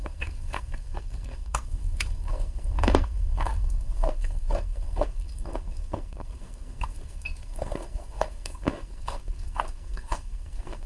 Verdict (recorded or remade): remade